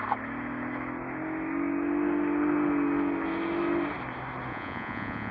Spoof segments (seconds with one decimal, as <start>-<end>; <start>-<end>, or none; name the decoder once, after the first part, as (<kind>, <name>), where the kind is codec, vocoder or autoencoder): 4.5-5.3 (vocoder, Vocos)